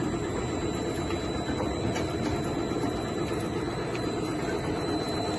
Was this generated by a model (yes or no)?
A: no